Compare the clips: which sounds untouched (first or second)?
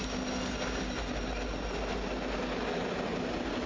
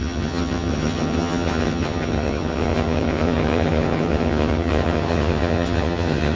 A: first